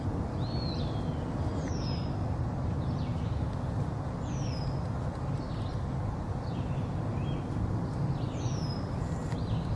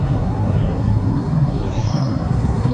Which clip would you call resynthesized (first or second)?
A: second